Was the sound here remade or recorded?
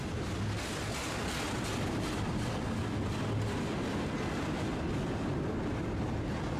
recorded